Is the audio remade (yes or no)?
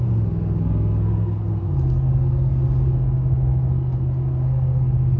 yes